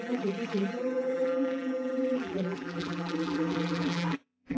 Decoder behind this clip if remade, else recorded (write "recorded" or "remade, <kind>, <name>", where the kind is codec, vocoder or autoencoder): remade, vocoder, BigVGAN v2